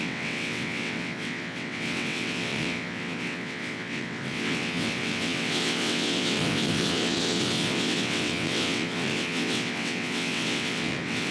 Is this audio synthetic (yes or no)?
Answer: yes